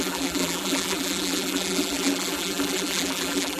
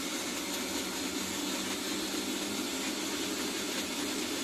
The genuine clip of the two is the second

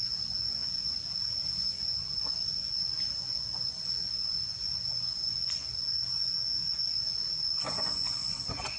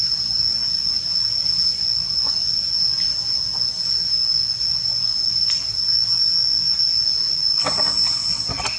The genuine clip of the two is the second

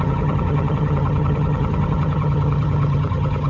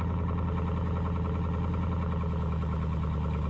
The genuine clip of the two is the second